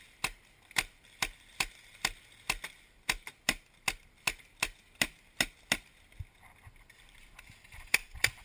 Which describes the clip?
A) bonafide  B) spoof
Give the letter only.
A